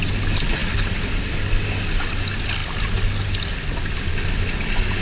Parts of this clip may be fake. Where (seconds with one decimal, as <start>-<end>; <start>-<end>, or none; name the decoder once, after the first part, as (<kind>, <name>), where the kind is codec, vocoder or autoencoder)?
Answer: none